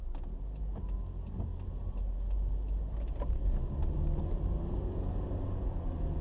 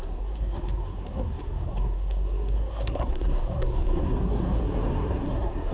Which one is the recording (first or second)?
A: first